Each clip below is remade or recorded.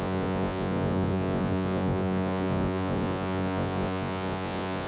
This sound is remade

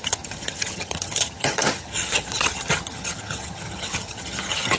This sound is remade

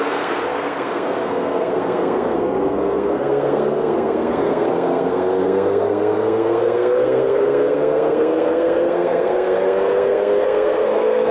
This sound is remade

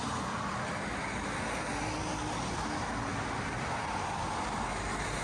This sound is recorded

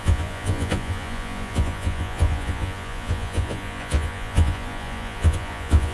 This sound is remade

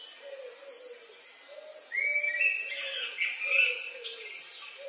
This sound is recorded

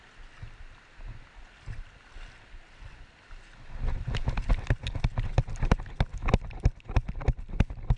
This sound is recorded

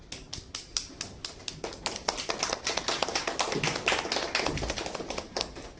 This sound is recorded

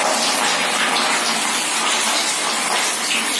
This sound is recorded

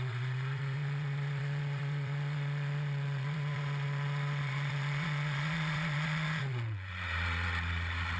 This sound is remade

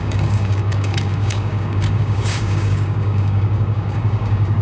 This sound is remade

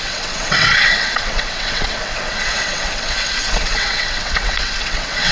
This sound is remade